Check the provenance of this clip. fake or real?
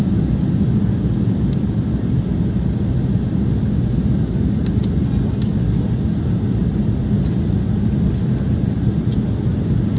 real